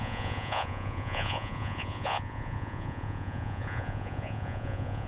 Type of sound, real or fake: fake